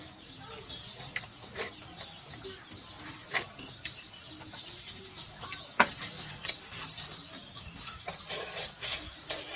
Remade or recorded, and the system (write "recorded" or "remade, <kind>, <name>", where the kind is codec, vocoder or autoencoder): remade, vocoder, BigVGAN v2